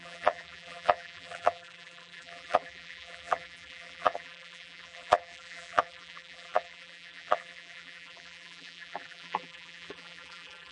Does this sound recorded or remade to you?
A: remade